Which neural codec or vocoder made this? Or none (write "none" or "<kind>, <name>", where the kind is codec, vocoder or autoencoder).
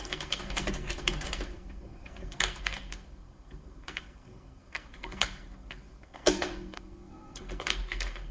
codec, SNAC